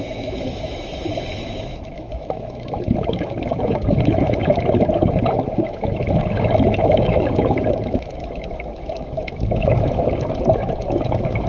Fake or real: fake